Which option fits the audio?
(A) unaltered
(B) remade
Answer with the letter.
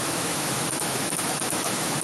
B